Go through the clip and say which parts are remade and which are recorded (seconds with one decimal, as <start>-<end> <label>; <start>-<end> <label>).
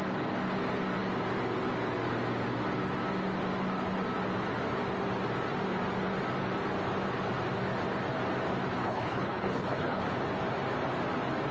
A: 0.0-8.8 recorded; 8.8-10.0 remade; 10.0-11.5 recorded